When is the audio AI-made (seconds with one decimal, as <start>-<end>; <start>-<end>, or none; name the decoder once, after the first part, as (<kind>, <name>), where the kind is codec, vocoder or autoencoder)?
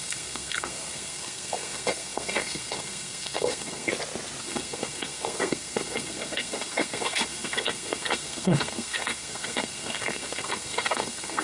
0.0-3.9 (codec, SNAC); 4.4-11.4